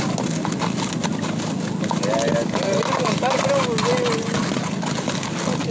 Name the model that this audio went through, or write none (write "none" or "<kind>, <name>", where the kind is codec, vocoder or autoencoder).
none